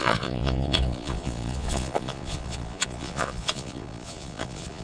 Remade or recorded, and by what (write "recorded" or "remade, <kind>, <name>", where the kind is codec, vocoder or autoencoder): remade, vocoder, Vocos